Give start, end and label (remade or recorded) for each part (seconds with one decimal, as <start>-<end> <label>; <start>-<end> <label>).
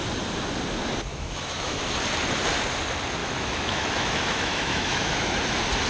0.0-1.1 recorded; 1.1-1.8 remade; 1.8-3.2 recorded; 3.2-5.4 remade; 5.4-5.9 recorded